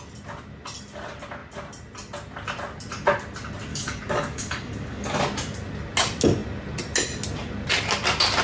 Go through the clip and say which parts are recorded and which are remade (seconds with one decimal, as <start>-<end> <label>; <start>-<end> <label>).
0.0-3.7 recorded; 3.7-5.2 remade; 5.2-8.4 recorded